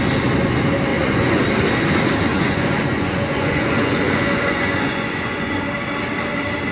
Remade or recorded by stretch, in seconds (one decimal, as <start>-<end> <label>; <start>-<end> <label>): 0.0-0.9 recorded; 0.9-1.4 remade; 1.4-2.3 recorded; 2.3-5.6 remade; 5.6-6.7 recorded